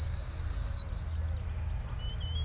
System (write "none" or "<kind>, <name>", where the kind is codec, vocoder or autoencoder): none